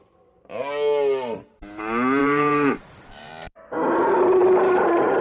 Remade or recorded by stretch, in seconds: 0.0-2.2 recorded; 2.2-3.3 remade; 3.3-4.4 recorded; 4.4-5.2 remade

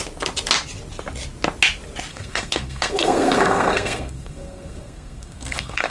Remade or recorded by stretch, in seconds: 0.0-2.1 recorded; 2.1-5.9 remade

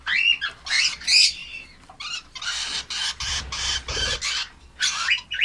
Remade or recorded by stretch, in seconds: 0.0-5.4 recorded

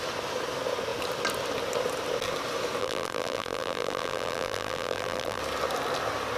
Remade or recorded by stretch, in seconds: 0.0-2.8 recorded; 2.8-5.4 remade; 5.4-6.4 recorded